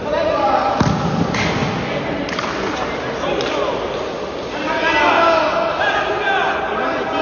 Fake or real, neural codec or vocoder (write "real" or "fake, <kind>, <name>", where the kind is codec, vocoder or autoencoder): real